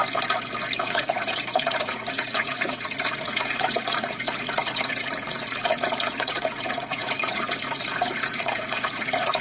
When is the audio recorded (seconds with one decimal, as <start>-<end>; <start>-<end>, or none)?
0.0-0.8